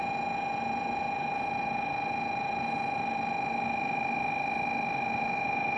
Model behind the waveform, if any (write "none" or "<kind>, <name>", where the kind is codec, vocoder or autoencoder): none